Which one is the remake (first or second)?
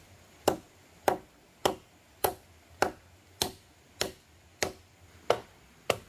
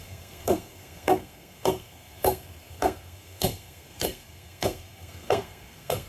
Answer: second